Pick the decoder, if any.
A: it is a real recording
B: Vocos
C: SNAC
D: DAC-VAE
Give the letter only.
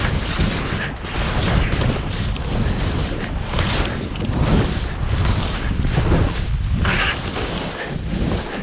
A